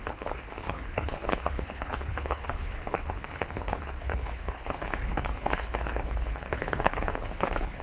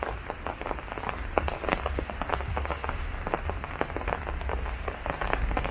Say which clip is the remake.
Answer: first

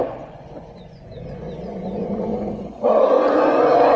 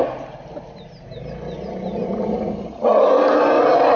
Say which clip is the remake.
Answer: first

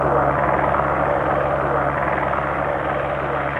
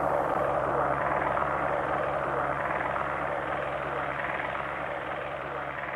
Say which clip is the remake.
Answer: second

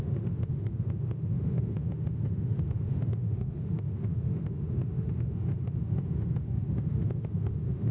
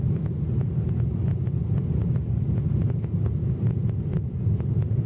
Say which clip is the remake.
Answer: first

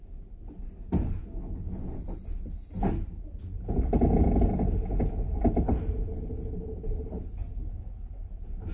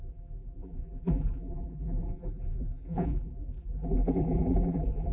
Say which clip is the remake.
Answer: second